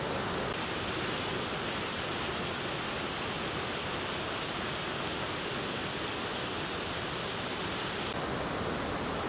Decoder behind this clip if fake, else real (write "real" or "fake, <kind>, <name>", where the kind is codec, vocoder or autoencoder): real